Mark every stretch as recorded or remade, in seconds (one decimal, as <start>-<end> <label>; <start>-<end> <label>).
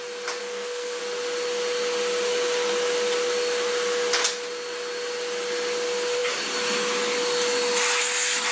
0.0-0.4 recorded; 0.4-1.0 remade; 1.0-8.5 recorded